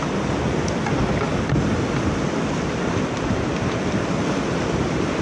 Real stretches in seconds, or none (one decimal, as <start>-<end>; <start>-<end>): 0.0-5.2